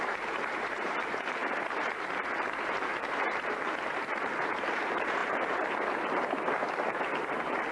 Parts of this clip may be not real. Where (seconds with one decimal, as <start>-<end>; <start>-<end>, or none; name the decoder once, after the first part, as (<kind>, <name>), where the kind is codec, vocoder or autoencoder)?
0.0-7.7 (vocoder, BigVGAN v2)